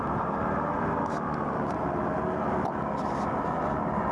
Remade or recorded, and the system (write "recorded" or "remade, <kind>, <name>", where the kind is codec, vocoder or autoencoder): recorded